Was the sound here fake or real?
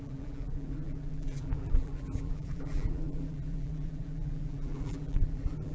fake